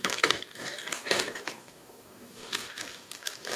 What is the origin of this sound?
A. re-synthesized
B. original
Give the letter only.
A